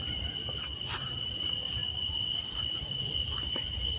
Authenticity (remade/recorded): recorded